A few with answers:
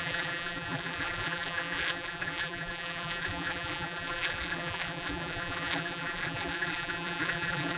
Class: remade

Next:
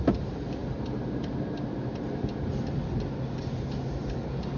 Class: remade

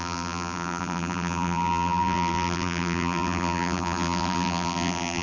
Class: remade